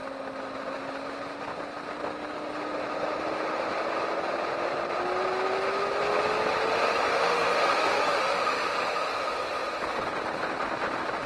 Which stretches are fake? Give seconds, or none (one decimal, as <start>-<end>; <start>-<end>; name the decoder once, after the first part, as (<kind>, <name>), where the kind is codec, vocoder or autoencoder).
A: 7.1-9.1 (autoencoder, DAC-VAE)